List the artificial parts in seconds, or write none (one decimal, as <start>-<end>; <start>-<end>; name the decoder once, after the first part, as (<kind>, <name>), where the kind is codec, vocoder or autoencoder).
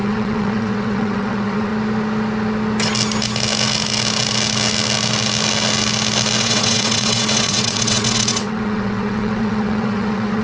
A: 0.0-1.7 (vocoder, WaveNeXt); 6.4-10.4